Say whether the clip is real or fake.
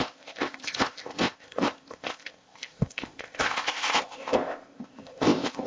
fake